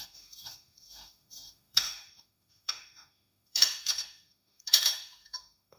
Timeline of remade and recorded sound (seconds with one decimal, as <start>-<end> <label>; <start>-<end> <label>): 0.0-5.8 remade